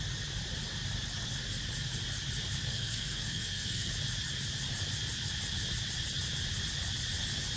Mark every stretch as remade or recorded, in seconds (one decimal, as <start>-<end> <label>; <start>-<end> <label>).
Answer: 0.0-2.7 recorded; 2.7-3.9 remade; 3.9-7.6 recorded